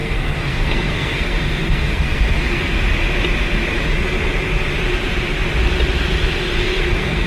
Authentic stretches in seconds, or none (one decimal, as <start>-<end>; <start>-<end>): 2.7-6.6